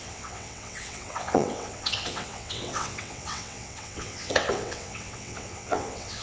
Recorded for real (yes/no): no